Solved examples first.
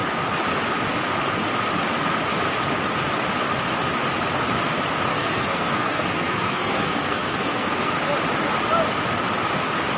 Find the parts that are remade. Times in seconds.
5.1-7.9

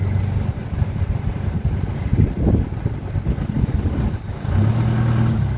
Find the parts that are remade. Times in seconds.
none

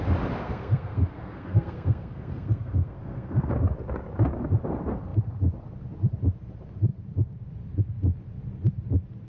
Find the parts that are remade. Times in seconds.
0.4-3.5

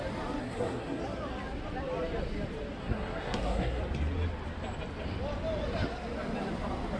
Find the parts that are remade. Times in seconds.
0.4-1.0; 2.8-3.8